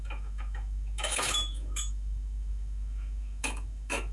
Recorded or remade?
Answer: remade